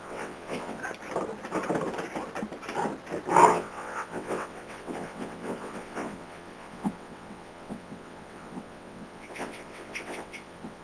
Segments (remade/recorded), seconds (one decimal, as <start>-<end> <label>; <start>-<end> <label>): 0.0-0.8 remade; 0.8-3.5 recorded; 3.5-10.8 remade